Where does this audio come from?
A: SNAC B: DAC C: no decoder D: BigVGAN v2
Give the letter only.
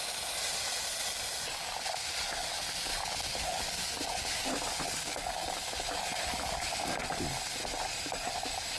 C